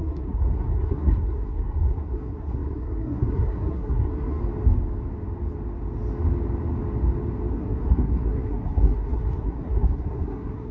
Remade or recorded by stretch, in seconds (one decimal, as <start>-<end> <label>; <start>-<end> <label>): 0.0-4.4 remade; 4.4-7.5 recorded; 7.5-10.7 remade